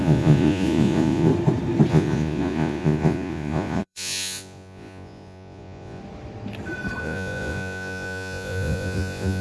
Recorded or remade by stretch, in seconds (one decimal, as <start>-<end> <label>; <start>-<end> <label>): 0.0-1.3 remade; 1.3-1.9 recorded; 1.9-6.0 remade; 6.0-7.0 recorded; 7.0-9.4 remade